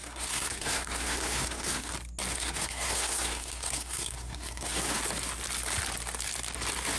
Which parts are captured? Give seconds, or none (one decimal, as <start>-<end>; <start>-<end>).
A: 1.9-2.3; 5.0-7.0